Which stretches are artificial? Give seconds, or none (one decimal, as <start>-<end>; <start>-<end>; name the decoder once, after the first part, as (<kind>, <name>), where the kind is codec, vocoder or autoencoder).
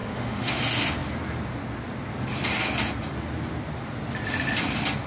0.0-0.6 (autoencoder, DAC-VAE)